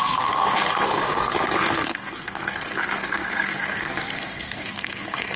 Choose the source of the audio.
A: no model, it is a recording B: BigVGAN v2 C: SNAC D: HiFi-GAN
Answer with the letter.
C